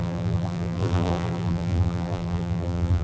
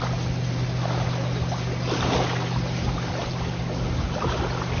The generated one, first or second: first